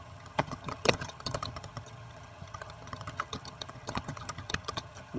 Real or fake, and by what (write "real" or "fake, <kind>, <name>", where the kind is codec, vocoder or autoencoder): fake, vocoder, HiFi-GAN